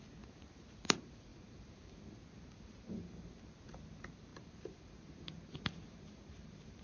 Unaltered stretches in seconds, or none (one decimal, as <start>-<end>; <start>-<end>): none